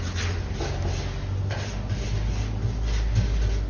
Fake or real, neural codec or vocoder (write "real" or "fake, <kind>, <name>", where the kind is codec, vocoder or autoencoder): real